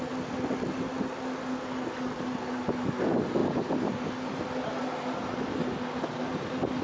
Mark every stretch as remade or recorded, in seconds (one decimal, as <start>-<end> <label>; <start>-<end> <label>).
0.0-6.8 recorded